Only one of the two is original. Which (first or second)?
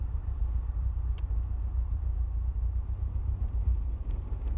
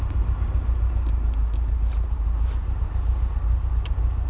second